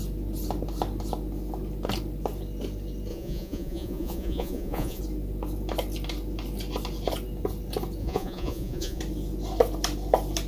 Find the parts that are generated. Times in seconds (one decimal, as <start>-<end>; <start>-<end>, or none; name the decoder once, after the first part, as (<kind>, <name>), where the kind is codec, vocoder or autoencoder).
3.1-5.0 (vocoder, Vocos); 8.0-9.0